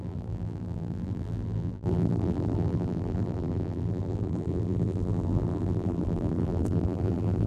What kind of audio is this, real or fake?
fake